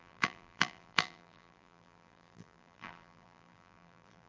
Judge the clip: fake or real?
fake